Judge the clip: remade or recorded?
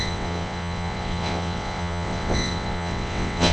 remade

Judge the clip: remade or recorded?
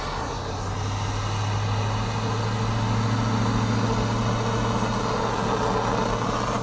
recorded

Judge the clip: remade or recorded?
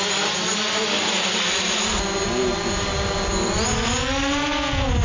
recorded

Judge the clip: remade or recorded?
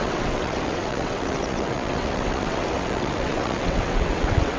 remade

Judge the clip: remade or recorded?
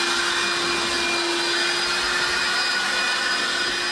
recorded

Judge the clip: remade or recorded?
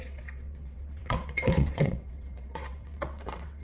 remade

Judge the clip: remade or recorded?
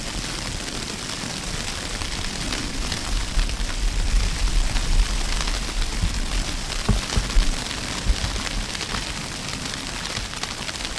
recorded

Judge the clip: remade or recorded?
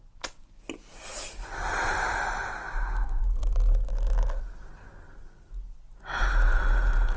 recorded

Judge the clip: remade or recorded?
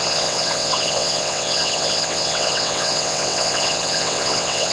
remade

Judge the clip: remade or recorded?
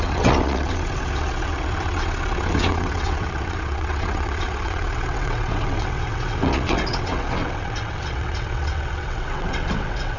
remade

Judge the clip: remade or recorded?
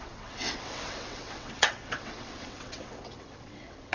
remade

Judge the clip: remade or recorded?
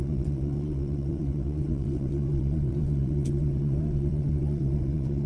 remade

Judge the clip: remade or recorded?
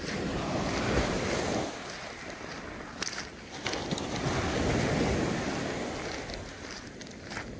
recorded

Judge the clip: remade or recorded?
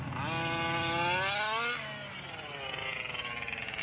recorded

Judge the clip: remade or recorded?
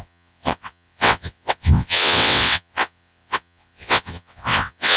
remade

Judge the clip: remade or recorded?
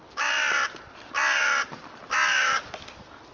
recorded